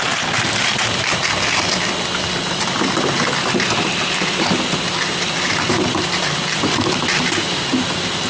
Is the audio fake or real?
real